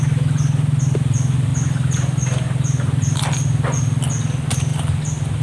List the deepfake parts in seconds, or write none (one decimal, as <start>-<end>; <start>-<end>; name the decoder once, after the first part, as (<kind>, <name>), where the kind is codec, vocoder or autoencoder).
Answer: none